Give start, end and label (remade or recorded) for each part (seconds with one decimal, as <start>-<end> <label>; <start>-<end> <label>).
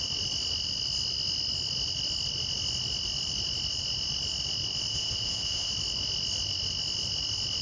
0.0-4.9 recorded; 4.9-5.7 remade; 5.7-7.6 recorded